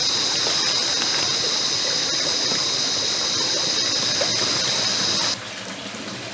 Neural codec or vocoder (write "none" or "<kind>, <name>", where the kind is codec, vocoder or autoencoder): none